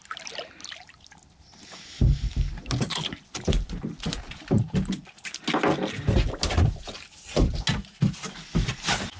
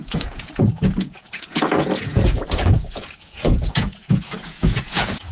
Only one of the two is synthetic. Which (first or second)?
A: second